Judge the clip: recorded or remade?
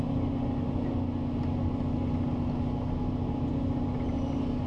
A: recorded